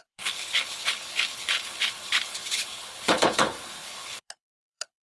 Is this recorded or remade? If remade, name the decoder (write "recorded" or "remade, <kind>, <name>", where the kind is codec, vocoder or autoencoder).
remade, codec, HILCodec